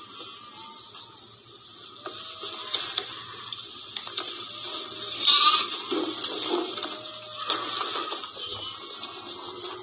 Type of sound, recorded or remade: recorded